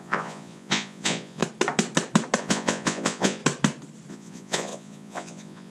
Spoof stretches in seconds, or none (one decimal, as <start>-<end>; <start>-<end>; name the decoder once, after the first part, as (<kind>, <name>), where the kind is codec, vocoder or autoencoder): 0.0-1.4 (vocoder, Vocos); 2.4-3.4; 4.1-5.7